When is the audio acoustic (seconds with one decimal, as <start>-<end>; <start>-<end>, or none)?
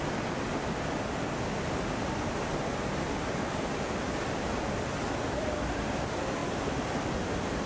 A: 0.0-6.4